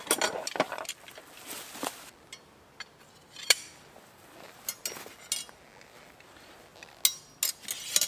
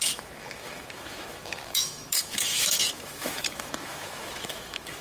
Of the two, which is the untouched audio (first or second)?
first